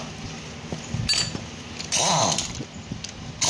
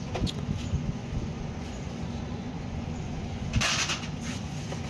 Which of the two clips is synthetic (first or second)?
second